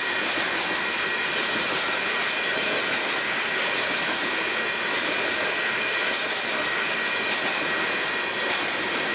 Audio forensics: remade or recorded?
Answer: recorded